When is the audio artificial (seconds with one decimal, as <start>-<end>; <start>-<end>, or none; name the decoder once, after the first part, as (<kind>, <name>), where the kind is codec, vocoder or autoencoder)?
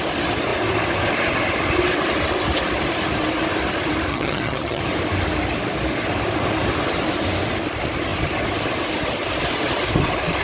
4.1-4.8 (vocoder, HiFi-GAN)